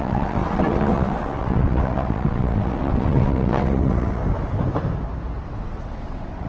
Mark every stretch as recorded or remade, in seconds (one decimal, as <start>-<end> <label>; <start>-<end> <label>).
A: 0.0-4.2 remade; 4.2-5.4 recorded; 5.4-6.5 remade